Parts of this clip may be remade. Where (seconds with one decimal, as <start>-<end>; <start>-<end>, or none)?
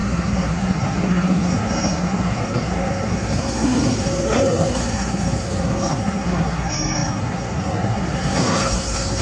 0.0-9.2